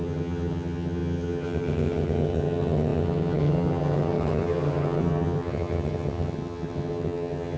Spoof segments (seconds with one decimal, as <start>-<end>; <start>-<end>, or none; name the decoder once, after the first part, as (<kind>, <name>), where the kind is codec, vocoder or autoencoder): 0.0-7.6 (vocoder, HiFi-GAN)